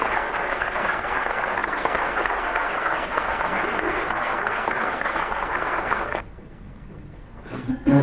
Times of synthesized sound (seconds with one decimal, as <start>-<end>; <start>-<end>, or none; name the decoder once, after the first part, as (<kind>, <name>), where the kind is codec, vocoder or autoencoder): 0.0-8.0 (codec, SNAC)